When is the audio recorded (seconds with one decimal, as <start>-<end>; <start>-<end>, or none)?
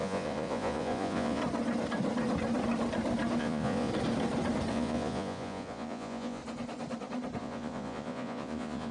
1.4-3.4; 3.9-4.7; 6.4-7.4